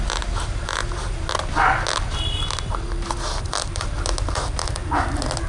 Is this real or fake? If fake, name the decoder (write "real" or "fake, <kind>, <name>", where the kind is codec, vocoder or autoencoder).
real